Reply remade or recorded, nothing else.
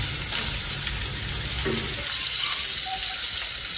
recorded